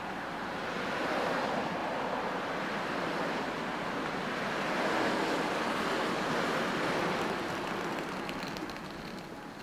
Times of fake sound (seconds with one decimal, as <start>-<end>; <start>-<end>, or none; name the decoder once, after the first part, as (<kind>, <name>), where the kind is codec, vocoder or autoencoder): none